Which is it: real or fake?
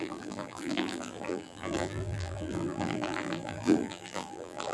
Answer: fake